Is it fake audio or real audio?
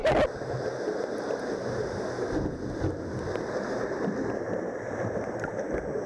real